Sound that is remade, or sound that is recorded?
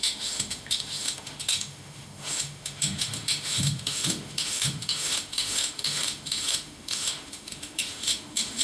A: remade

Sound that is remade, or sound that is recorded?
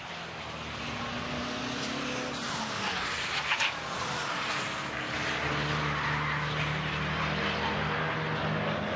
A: recorded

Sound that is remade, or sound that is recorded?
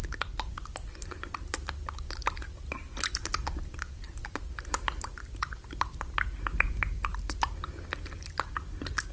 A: remade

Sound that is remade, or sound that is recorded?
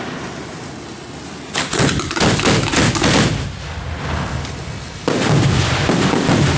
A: recorded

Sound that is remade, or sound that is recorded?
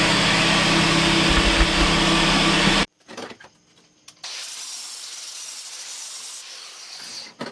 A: recorded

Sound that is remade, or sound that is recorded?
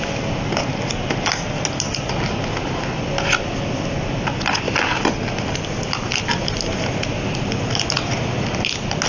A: recorded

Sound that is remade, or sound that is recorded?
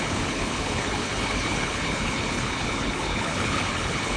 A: remade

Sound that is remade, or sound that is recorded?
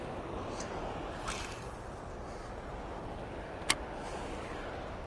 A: recorded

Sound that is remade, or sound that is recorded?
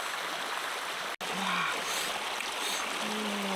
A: recorded